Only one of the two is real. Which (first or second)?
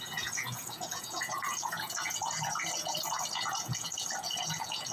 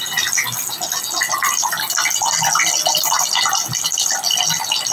second